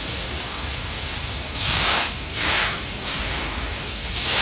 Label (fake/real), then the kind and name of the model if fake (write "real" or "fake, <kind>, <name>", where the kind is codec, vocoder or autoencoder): fake, codec, DAC